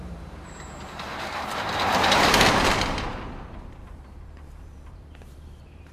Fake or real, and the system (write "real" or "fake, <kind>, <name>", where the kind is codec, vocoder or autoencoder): fake, vocoder, BigVGAN v2